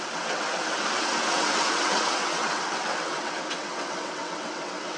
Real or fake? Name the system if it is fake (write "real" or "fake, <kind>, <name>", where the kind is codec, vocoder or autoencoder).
fake, vocoder, WaveNeXt